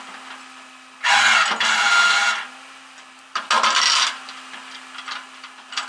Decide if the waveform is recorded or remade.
recorded